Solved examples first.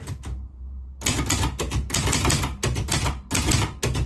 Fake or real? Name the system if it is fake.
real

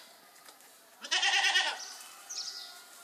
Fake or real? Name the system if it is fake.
real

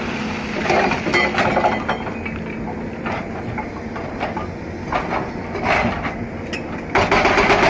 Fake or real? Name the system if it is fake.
real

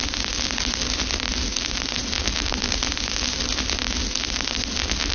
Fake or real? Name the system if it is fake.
real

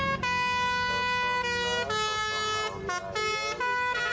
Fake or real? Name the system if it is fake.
real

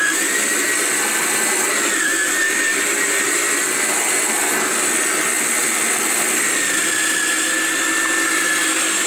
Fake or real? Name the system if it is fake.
real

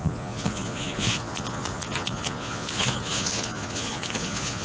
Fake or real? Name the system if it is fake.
fake, vocoder, Vocos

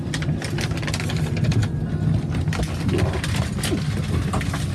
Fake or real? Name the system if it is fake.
real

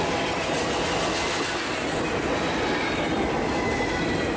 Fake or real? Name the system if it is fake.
real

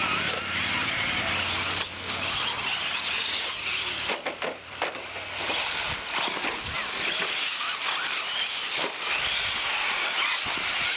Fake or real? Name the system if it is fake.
real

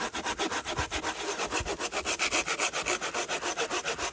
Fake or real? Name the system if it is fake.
real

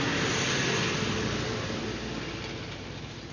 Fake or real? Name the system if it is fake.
real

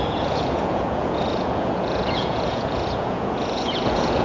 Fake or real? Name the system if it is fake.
fake, vocoder, Vocos